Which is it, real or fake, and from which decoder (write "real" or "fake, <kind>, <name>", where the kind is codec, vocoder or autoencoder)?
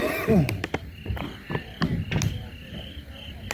real